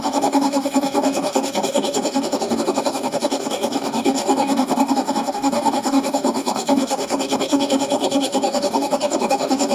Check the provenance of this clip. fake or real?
fake